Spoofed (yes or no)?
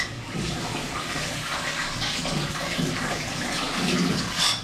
yes